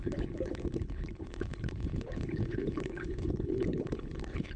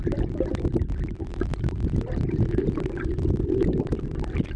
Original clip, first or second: second